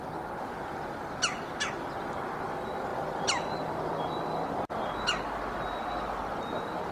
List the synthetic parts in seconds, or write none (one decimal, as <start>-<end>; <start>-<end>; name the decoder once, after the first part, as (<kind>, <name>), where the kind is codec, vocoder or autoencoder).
2.9-3.8 (vocoder, BigVGAN v2)